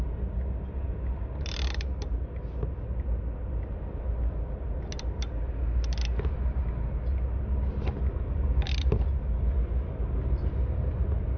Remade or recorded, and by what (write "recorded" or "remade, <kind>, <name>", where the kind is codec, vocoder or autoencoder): recorded